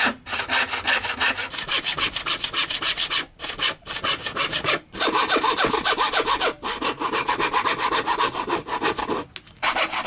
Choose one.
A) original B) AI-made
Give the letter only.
A